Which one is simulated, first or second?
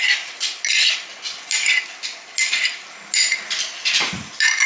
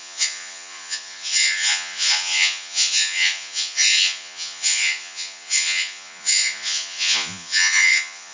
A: second